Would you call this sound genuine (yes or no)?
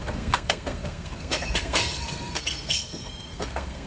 no